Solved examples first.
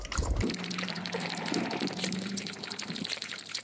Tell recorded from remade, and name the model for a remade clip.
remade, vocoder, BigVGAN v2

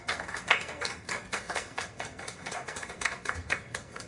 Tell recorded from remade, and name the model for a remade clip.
remade, codec, SNAC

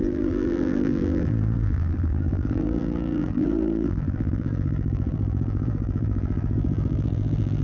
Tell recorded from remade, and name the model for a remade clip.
remade, vocoder, BigVGAN v2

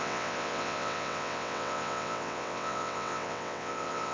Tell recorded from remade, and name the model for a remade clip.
remade, vocoder, WaveNeXt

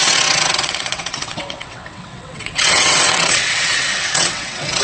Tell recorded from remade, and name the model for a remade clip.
remade, vocoder, WaveNeXt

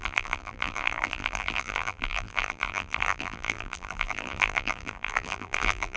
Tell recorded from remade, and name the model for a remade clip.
remade, vocoder, BigVGAN v2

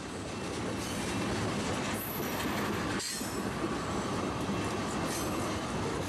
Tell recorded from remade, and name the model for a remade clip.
recorded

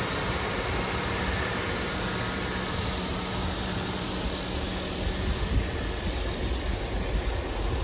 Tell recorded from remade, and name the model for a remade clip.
recorded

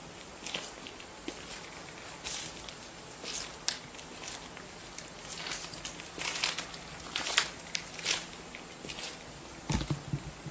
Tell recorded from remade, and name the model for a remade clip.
recorded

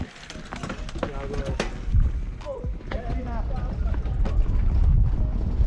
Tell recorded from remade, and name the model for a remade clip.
recorded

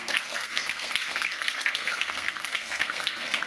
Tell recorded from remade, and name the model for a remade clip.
remade, codec, SNAC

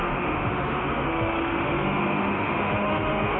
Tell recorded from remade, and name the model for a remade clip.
remade, autoencoder, DAC-VAE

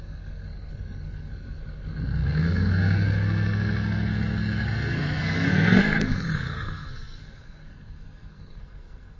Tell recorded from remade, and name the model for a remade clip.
remade, codec, SNAC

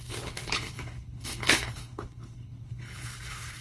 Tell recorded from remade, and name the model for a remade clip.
remade, codec, HILCodec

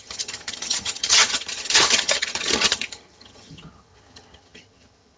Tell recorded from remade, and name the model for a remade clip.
remade, vocoder, HiFi-GAN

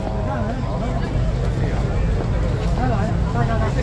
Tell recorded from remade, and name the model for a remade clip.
recorded